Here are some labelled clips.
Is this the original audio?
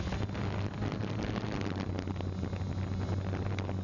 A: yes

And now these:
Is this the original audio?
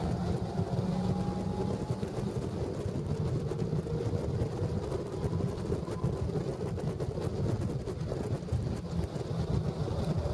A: yes